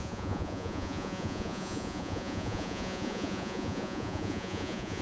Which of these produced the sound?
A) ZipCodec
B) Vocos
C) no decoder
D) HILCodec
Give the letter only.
B